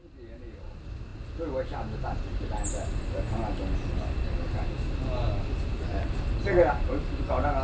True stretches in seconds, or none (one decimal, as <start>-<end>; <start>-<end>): 0.0-7.6